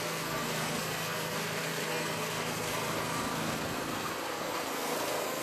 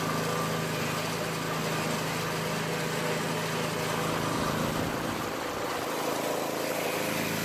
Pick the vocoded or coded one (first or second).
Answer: first